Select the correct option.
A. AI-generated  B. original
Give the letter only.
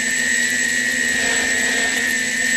B